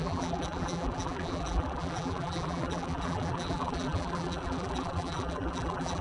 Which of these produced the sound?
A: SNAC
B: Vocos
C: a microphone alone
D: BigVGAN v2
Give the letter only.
D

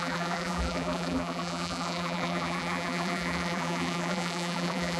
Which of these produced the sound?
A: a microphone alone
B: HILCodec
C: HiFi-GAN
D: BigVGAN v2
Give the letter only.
D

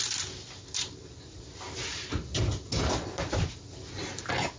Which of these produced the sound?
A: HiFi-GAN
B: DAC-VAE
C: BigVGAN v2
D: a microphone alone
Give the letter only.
D